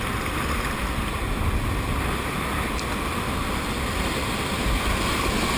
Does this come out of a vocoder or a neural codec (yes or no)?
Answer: no